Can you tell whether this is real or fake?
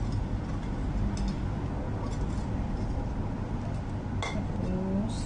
real